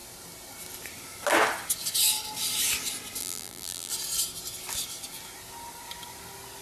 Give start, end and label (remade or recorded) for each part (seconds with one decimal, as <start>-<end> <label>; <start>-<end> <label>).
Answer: 0.0-3.2 recorded; 3.2-3.9 remade; 3.9-6.6 recorded